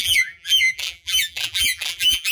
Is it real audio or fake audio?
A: fake